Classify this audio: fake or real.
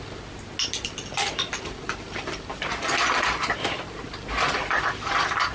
real